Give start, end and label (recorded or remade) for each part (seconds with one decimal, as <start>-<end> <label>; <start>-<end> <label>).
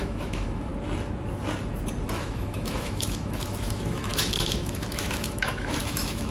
0.0-0.7 remade; 0.7-2.2 recorded; 2.2-6.3 remade